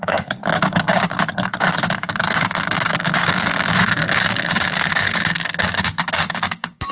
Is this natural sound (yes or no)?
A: no